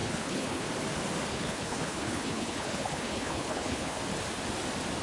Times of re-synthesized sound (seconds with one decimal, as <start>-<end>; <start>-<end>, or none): 0.0-0.7; 1.3-4.0